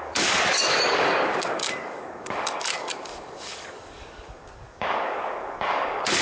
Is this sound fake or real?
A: fake